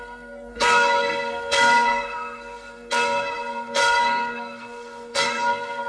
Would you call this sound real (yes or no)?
no